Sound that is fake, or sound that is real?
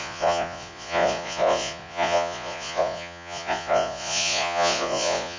fake